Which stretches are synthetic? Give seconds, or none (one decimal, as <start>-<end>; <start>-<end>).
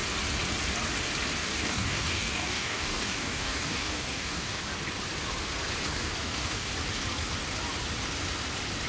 1.4-4.6; 5.9-6.7